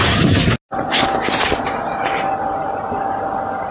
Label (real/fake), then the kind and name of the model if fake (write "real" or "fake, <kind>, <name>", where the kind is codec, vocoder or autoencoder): real